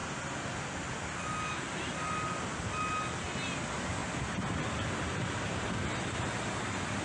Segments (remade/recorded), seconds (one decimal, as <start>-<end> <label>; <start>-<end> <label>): 0.0-7.0 recorded

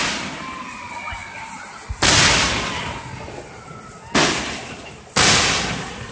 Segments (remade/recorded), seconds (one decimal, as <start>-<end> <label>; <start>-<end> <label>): 0.0-6.1 recorded

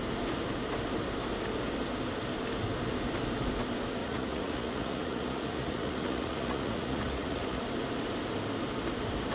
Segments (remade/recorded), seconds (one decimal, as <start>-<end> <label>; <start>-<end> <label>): 0.0-4.0 recorded; 4.0-7.6 remade; 7.6-9.3 recorded

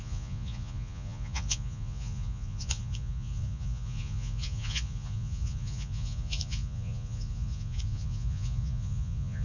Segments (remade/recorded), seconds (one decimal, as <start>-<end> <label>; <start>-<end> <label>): 0.0-9.4 remade